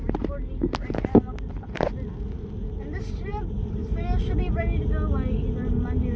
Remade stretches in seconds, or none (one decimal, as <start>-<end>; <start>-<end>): 3.3-4.6